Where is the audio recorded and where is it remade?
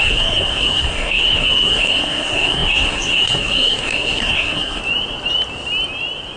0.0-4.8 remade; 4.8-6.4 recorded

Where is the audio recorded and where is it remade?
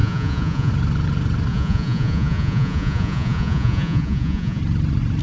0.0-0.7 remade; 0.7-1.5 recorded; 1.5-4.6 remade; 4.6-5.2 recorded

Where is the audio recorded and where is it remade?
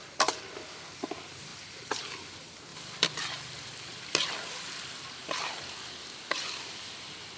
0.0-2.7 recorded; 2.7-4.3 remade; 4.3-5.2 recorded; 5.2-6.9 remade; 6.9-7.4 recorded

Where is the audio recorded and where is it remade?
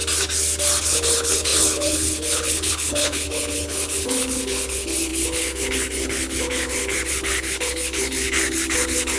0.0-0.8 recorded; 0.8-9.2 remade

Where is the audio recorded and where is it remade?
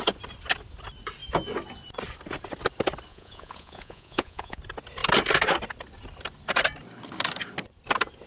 0.0-3.1 recorded; 3.1-4.6 remade; 4.6-8.3 recorded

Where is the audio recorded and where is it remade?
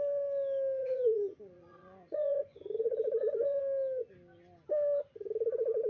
0.0-0.8 recorded; 0.8-3.6 remade; 3.6-5.9 recorded